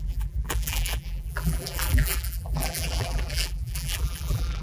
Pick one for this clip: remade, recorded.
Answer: remade